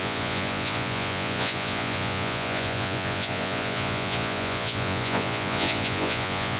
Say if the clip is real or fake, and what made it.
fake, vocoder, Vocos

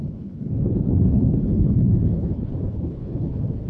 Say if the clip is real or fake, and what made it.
fake, codec, HILCodec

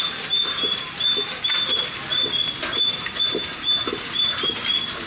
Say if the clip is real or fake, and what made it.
real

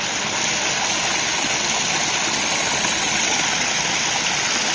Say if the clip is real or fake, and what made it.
real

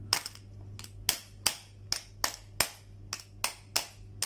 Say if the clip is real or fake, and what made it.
real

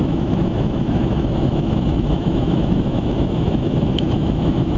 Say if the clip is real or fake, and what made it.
fake, autoencoder, DAC-VAE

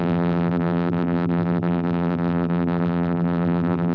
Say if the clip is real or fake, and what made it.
fake, vocoder, BigVGAN v2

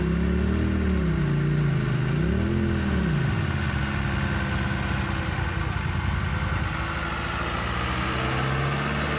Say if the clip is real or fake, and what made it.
real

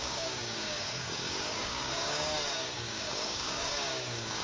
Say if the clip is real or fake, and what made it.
fake, codec, DAC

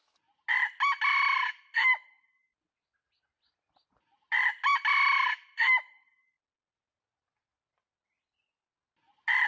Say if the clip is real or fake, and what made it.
real